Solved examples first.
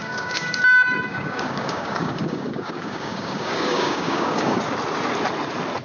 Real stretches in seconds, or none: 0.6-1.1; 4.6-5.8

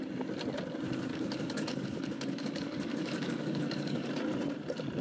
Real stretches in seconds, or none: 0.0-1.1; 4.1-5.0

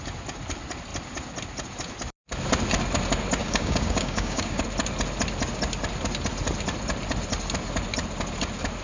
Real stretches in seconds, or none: 0.0-3.4; 4.6-8.8